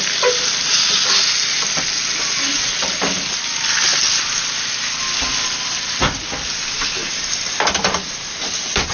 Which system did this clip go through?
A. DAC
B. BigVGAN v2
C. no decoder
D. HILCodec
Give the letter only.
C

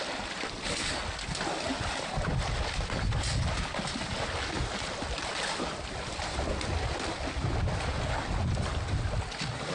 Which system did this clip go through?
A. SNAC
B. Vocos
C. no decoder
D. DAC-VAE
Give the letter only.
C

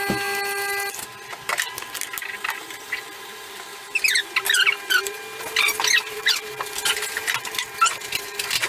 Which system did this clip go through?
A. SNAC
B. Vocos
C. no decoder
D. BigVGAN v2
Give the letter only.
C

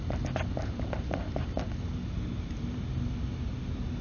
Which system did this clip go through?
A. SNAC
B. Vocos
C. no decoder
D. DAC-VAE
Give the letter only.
C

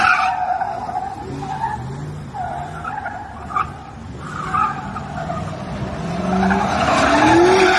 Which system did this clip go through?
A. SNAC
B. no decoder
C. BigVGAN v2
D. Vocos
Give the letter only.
B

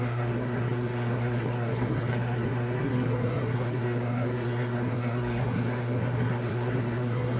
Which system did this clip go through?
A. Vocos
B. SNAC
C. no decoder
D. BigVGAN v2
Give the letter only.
B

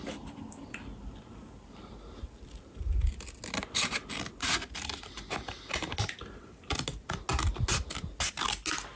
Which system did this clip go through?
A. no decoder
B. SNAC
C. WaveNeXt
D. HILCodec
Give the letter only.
A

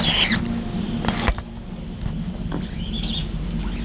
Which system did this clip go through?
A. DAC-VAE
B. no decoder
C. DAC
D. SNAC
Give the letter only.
B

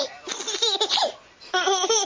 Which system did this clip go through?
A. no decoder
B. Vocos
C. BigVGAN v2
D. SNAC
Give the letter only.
A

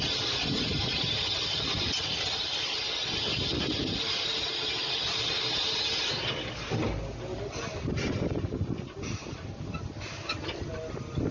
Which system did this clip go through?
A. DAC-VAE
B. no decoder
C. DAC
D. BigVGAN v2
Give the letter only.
B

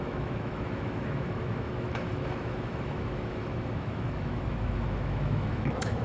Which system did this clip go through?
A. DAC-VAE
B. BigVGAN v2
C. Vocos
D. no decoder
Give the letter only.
A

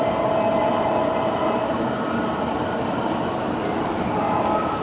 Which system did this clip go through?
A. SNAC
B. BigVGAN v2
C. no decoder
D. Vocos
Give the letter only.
B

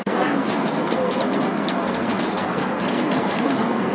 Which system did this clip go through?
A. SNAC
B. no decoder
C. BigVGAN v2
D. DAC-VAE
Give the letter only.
A